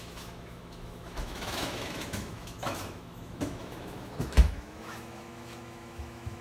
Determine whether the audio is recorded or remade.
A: remade